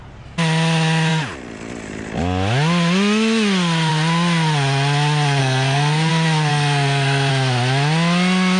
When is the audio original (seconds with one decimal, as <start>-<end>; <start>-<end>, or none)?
0.0-5.4; 6.1-6.5; 7.3-8.6